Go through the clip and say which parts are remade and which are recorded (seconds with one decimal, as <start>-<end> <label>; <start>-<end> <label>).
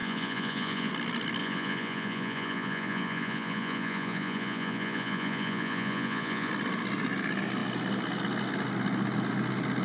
0.0-0.9 remade; 0.9-1.4 recorded; 1.4-6.5 remade; 6.5-9.8 recorded